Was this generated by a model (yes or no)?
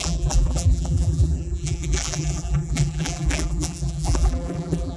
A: yes